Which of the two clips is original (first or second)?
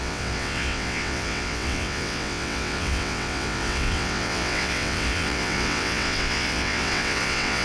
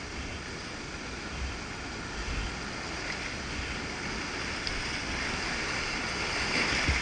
second